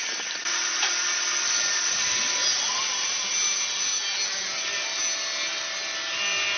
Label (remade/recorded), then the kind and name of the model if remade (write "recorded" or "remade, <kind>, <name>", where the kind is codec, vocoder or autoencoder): recorded